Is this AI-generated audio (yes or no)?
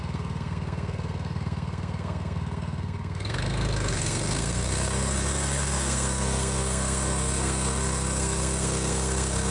yes